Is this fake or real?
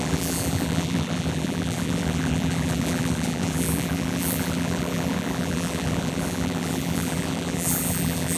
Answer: fake